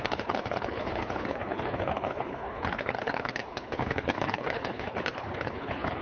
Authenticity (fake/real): fake